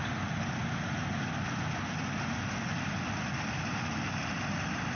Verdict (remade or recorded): recorded